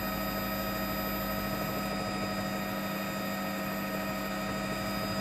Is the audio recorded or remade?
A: recorded